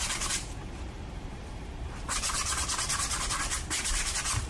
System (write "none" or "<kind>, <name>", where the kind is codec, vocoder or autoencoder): vocoder, BigVGAN v2